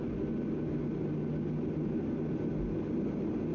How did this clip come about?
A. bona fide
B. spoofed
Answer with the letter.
A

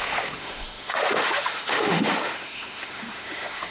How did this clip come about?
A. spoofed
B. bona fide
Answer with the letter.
A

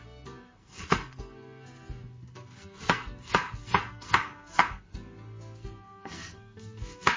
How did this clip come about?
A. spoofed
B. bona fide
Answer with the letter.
A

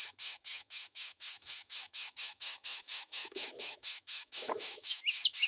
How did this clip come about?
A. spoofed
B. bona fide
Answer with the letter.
A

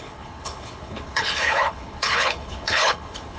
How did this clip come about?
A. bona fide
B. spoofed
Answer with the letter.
B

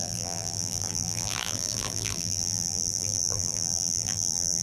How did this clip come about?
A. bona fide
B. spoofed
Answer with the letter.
B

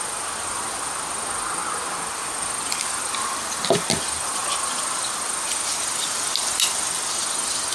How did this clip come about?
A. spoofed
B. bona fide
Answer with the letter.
B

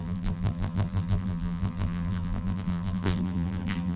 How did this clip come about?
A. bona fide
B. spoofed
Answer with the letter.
B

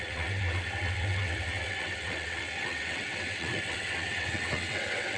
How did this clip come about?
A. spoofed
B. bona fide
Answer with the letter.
A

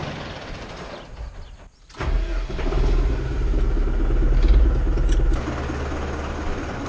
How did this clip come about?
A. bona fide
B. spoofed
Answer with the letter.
A